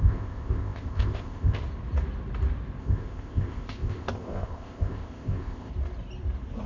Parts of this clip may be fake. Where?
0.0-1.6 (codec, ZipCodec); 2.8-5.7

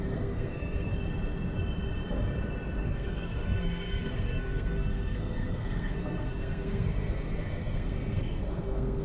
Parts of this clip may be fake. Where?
0.0-0.9 (codec, SNAC); 2.8-9.0

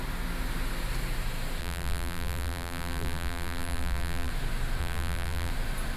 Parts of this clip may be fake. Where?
1.6-4.3 (vocoder, BigVGAN v2); 4.8-5.5